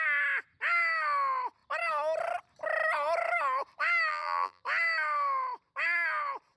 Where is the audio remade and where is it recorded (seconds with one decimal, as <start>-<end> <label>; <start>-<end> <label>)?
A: 0.0-4.1 recorded; 4.1-4.6 remade; 4.6-6.6 recorded